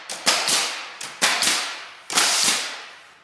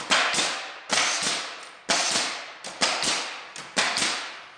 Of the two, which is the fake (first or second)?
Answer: first